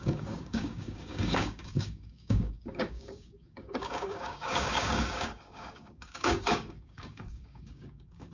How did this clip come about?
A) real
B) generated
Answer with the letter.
B